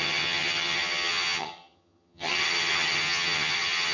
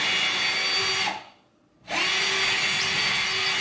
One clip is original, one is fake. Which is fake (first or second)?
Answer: first